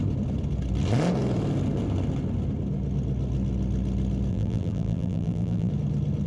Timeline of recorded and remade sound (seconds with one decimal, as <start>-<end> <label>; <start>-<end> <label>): 0.0-4.3 recorded; 4.3-5.7 remade; 5.7-6.3 recorded